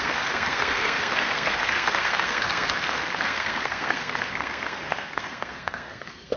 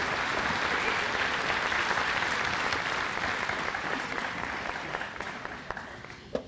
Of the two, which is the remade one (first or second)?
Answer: first